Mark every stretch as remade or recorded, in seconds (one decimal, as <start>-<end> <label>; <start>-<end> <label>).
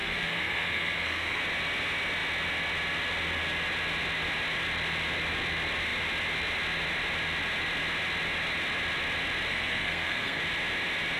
0.0-1.4 remade; 1.4-9.5 recorded; 9.5-10.4 remade; 10.4-11.2 recorded